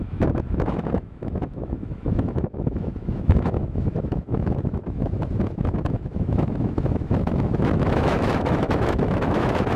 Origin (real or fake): fake